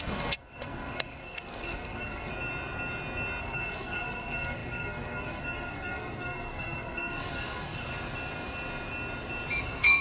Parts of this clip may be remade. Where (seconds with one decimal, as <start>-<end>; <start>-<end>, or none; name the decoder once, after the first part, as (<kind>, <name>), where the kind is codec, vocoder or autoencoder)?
0.0-2.3 (codec, SNAC); 3.4-7.9; 9.6-10.0